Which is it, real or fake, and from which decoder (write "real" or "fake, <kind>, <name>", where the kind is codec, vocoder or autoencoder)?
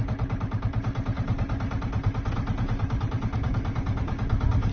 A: real